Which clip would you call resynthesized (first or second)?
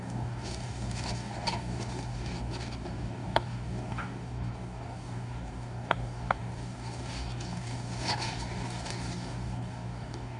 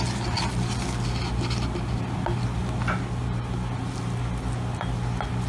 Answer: first